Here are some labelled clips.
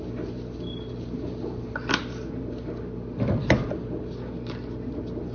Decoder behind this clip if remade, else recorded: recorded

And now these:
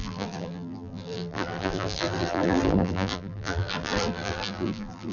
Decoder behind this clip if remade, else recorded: remade, vocoder, BigVGAN v2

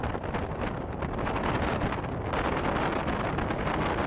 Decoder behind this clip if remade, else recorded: recorded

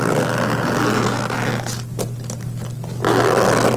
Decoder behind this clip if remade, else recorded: recorded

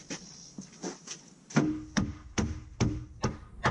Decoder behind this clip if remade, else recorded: recorded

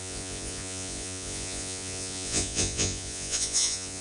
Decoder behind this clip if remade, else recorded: remade, vocoder, Vocos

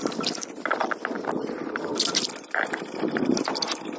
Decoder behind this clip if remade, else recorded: recorded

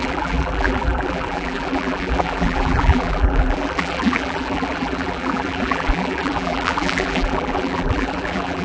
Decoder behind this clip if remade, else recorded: remade, vocoder, BigVGAN v2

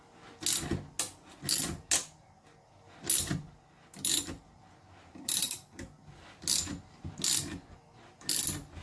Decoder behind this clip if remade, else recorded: recorded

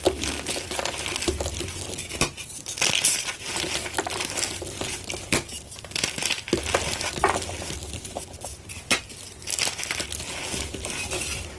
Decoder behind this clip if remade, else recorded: recorded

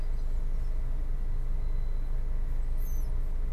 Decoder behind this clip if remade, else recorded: recorded